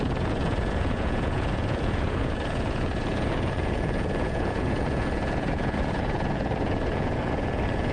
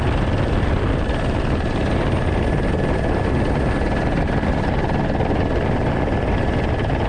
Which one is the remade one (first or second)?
first